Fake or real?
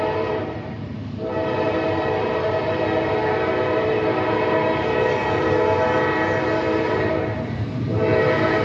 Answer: fake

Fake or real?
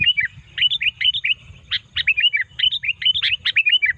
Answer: real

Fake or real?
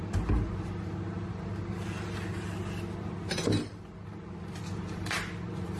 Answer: real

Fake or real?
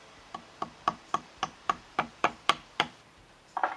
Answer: fake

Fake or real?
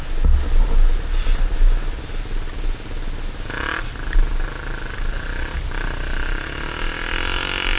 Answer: real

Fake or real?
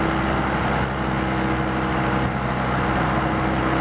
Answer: real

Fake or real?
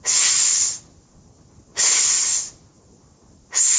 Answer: real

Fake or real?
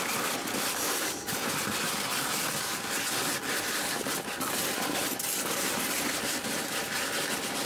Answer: fake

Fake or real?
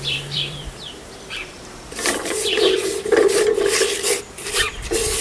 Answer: fake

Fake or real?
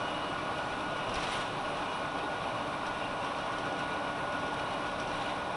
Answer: real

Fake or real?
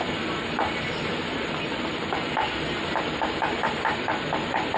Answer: real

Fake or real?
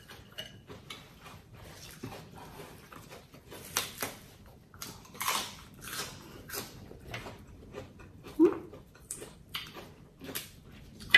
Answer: fake